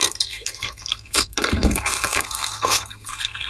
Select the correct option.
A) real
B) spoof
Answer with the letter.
B